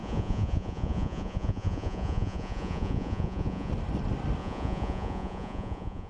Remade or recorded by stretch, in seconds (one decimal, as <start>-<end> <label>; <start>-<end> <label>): 0.0-3.7 remade; 3.7-4.4 recorded; 4.4-6.1 remade